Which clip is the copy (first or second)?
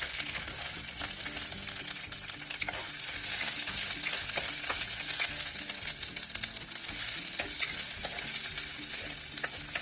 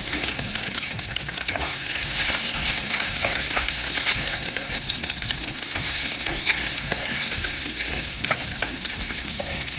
second